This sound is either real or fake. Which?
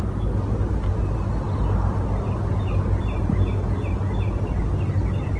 real